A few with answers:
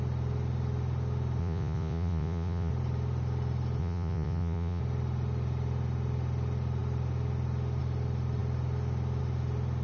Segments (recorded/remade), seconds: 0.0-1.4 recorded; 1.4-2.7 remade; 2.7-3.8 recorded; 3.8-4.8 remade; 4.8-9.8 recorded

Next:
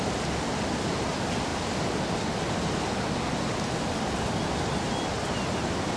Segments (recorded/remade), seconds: 0.0-6.0 recorded

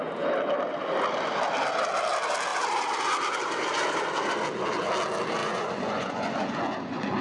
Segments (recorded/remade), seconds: 0.0-5.4 recorded; 5.4-7.2 remade

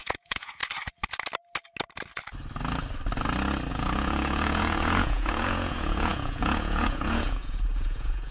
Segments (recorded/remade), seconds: 0.0-0.6 remade; 0.6-3.7 recorded; 3.7-8.3 remade

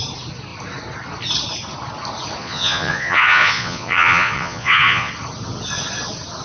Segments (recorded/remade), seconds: 0.0-2.4 recorded; 2.4-5.1 remade; 5.1-6.4 recorded

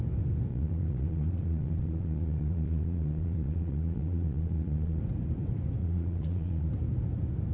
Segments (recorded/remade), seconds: 0.0-0.5 recorded; 0.5-5.0 remade; 5.0-5.8 recorded; 5.8-6.7 remade; 6.7-7.5 recorded

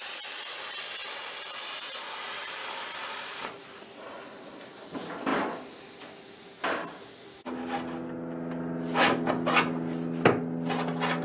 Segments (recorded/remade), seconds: 0.0-11.2 recorded

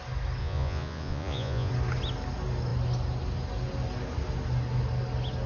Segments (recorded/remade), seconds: 0.0-0.4 recorded; 0.4-1.7 remade; 1.7-5.5 recorded